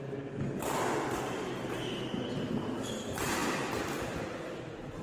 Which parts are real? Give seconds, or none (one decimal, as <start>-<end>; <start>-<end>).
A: 0.0-5.0